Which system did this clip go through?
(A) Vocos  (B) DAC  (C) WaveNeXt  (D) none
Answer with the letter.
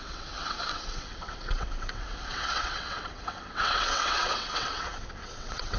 C